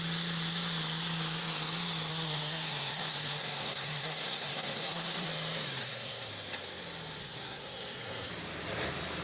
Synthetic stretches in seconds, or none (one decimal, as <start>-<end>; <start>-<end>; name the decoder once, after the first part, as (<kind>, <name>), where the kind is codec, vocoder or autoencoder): 2.1-5.3 (codec, SNAC); 5.8-6.3; 7.2-8.3